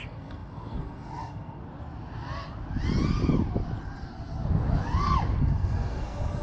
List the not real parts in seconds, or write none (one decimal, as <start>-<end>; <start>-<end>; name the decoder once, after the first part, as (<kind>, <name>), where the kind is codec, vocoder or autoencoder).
0.0-1.6 (codec, SNAC); 5.4-6.4